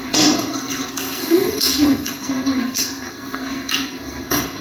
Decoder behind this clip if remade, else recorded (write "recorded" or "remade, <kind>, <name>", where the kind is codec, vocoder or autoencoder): remade, codec, SNAC